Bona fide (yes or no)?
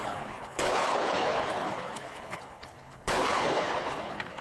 no